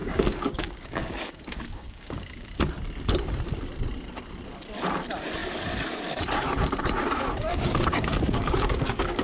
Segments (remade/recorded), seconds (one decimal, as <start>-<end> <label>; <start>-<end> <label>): 0.0-2.6 remade; 2.6-7.5 recorded; 7.5-9.2 remade